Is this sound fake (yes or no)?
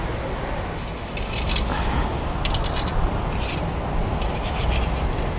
no